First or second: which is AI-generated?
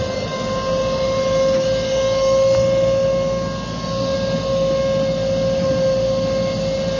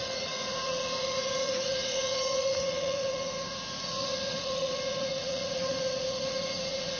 second